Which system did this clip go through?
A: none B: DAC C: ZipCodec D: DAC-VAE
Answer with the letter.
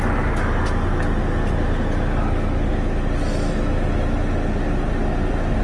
A